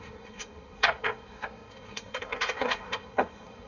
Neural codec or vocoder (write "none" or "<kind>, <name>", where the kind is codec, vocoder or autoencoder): codec, SNAC